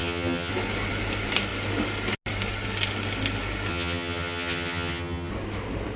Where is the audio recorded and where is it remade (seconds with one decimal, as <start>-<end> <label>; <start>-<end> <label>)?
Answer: 0.0-0.5 remade; 0.5-3.7 recorded; 3.7-5.3 remade; 5.3-6.0 recorded